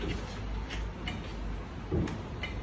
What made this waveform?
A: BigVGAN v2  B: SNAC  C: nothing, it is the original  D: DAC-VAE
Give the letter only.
C